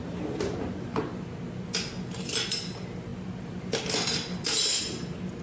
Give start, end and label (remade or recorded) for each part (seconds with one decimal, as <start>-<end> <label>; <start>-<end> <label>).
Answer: 0.0-5.4 recorded